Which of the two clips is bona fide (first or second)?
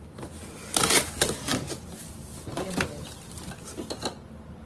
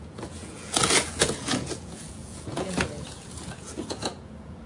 first